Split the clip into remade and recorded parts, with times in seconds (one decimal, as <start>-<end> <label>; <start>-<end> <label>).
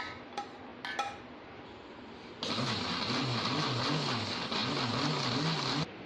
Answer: 0.0-6.1 recorded